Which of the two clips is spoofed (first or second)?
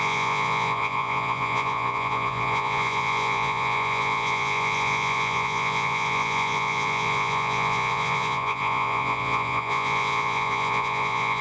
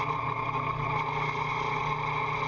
first